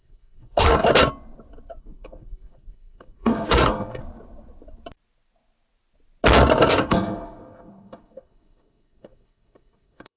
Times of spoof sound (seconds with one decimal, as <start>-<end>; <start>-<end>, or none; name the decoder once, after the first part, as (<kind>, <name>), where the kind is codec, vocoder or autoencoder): 0.0-0.9 (codec, SNAC); 1.8-4.0; 6.7-10.2